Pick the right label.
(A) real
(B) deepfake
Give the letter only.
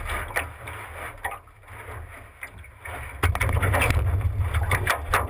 A